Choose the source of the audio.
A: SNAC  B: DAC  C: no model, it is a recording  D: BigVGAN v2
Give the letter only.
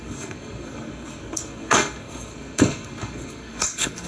A